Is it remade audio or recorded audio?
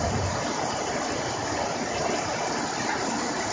recorded